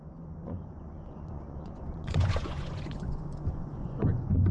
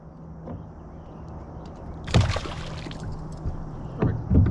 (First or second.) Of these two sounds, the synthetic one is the first